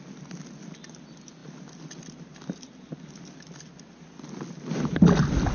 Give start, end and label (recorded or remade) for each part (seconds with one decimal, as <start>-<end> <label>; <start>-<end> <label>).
0.0-5.5 recorded